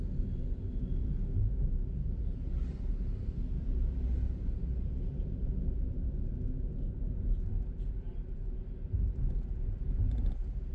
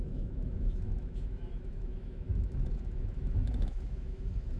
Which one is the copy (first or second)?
second